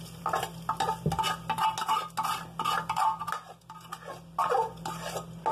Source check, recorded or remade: recorded